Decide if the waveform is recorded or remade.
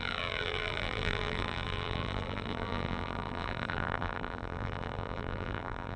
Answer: remade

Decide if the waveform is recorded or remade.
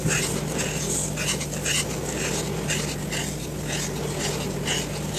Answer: recorded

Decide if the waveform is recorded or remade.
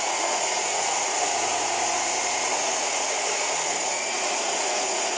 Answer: remade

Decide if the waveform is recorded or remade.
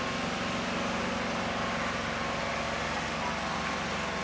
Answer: recorded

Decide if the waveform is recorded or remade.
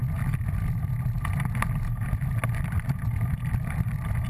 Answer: recorded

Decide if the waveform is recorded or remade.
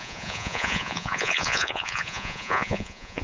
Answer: remade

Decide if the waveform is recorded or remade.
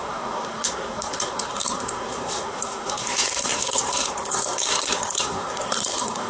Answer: remade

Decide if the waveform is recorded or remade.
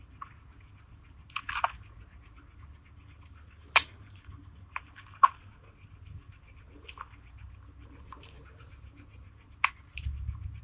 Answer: recorded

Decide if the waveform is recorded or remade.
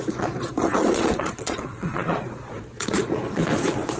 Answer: remade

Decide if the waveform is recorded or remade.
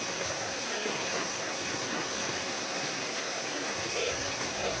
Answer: remade